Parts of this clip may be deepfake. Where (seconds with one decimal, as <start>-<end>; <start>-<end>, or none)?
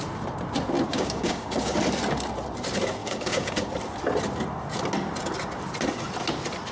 0.9-1.8; 3.0-3.7